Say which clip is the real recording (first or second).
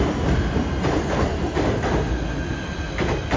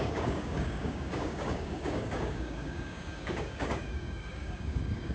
first